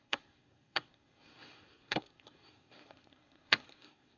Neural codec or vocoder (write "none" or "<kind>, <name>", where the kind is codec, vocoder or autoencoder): codec, SNAC